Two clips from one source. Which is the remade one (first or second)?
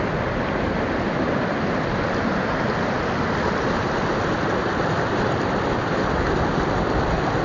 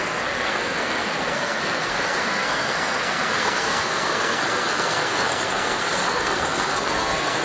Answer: second